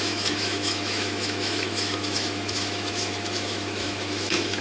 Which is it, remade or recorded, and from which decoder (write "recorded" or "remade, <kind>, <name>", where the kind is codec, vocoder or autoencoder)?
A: remade, autoencoder, DAC-VAE